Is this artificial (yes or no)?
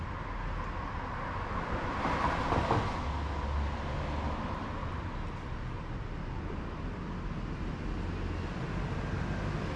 no